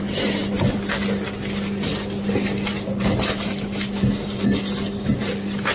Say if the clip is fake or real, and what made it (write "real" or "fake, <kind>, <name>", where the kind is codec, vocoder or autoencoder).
real